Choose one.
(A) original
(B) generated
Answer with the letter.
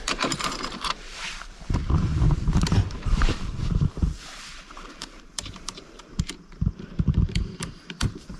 B